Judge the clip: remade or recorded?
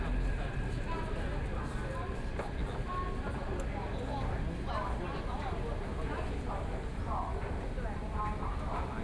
recorded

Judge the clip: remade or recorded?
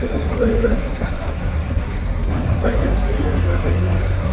remade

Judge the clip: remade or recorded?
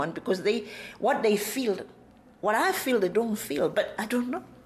recorded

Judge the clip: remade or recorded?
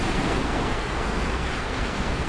remade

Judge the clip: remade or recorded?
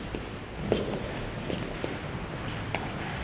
recorded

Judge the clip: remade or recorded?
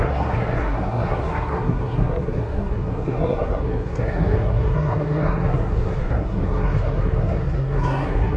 remade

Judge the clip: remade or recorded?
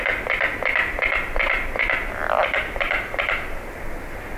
recorded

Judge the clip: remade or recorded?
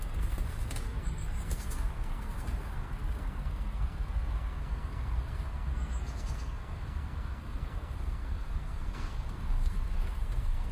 remade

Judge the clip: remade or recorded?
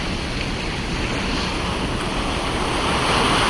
recorded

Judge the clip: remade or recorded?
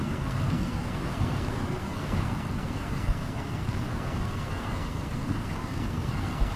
remade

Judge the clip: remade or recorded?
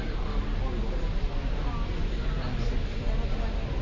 recorded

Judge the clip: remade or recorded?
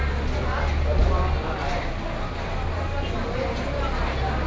recorded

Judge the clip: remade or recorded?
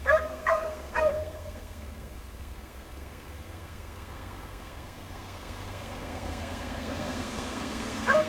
remade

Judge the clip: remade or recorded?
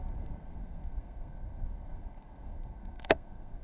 remade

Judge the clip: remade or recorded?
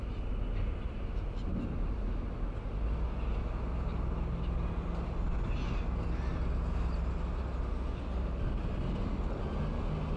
recorded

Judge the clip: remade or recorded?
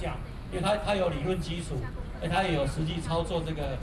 recorded